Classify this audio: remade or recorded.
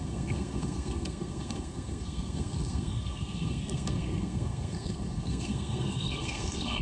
remade